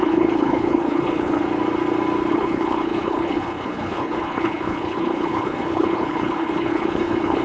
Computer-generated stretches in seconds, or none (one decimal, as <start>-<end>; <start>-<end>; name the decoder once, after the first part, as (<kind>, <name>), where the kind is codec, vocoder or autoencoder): 0.0-1.4 (codec, HILCodec); 2.3-7.4